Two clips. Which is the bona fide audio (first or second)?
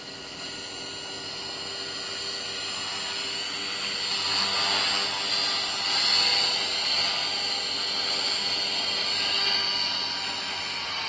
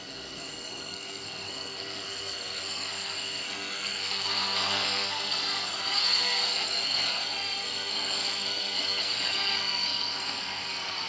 first